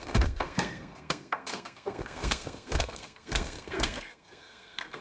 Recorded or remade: remade